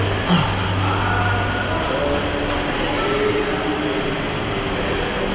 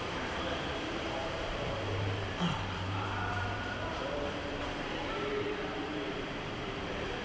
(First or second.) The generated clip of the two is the second